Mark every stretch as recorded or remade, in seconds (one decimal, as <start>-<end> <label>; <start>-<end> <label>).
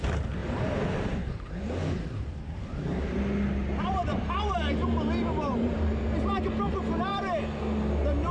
0.0-0.4 recorded; 0.4-3.2 remade; 3.2-3.6 recorded; 3.6-6.4 remade; 6.4-8.3 recorded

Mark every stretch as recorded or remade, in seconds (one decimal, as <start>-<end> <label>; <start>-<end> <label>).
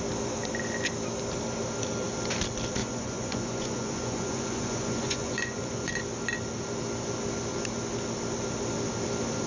0.0-2.8 recorded; 2.8-6.0 remade; 6.0-9.5 recorded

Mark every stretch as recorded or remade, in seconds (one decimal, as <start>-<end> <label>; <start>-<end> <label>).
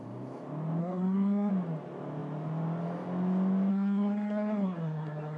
0.0-0.8 recorded; 0.8-1.5 remade; 1.5-3.7 recorded; 3.7-5.4 remade